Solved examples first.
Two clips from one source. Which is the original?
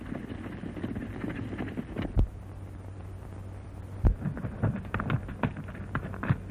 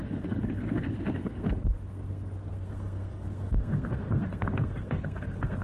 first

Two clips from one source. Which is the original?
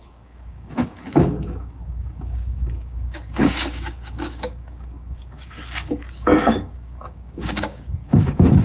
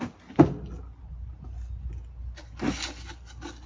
second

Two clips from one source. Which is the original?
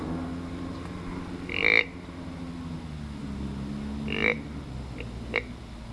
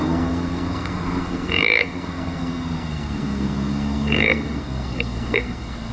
first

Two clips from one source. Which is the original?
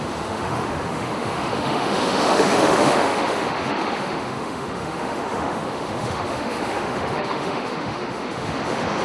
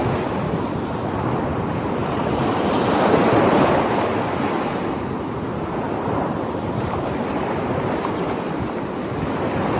second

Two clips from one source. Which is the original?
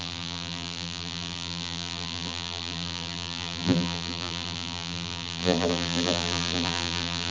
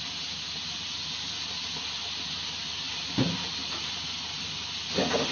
second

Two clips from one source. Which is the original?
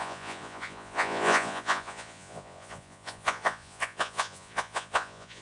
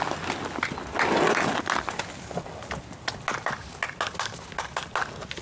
second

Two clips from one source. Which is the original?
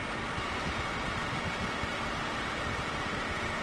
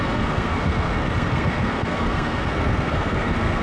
first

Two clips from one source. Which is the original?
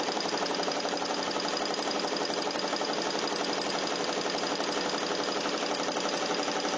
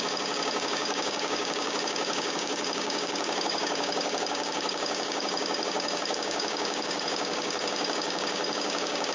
first